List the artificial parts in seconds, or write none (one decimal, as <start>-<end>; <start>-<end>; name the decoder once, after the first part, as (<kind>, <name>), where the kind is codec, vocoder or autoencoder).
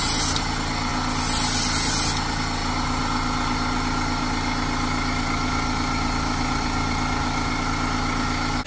none